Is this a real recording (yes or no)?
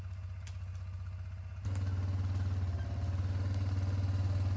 yes